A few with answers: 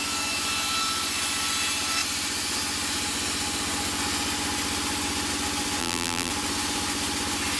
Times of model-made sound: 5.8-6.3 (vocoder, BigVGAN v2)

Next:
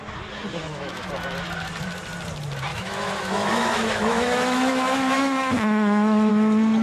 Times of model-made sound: 0.5-1.1 (autoencoder, DAC-VAE); 2.7-6.3

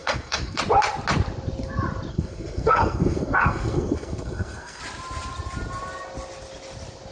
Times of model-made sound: 0.0-0.6 (codec, SNAC); 2.1-4.8

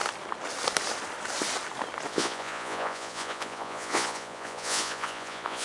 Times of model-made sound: 2.1-5.6 (vocoder, Vocos)

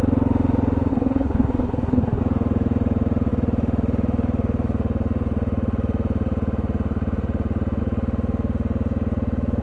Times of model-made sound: 0.9-2.2 (codec, SNAC)